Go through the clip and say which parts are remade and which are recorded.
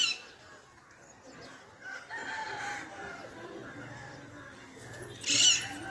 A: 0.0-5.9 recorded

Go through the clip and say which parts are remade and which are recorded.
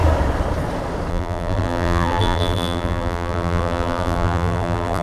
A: 0.0-1.1 recorded; 1.1-5.0 remade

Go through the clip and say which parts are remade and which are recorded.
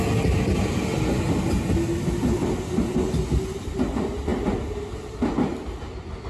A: 0.0-6.3 recorded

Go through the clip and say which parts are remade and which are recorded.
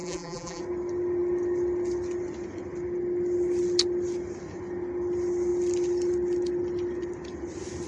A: 0.0-0.6 remade; 0.6-7.9 recorded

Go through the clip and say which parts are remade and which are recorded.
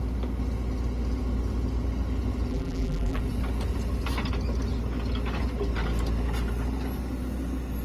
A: 0.0-2.5 recorded; 2.5-3.2 remade; 3.2-7.8 recorded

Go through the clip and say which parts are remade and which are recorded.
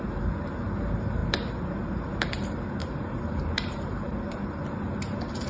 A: 0.0-2.8 recorded; 2.8-4.4 remade; 4.4-5.5 recorded